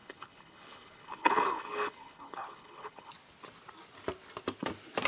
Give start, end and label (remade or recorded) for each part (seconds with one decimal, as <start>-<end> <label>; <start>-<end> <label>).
0.0-3.1 remade; 3.1-5.1 recorded